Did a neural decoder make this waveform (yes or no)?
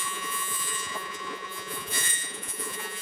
yes